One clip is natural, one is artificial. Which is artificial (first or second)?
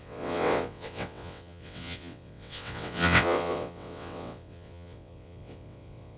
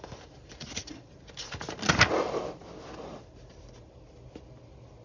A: first